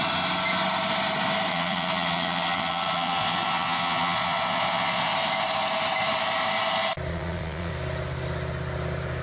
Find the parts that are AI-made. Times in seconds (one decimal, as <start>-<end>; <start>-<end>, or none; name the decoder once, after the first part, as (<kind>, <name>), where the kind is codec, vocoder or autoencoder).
1.5-5.1 (vocoder, Vocos); 7.1-7.7